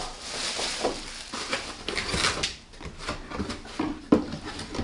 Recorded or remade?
recorded